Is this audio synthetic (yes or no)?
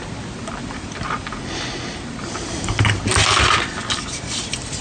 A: no